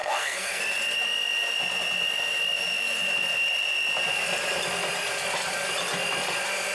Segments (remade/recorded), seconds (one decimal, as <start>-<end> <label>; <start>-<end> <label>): 0.0-0.6 remade; 0.6-6.7 recorded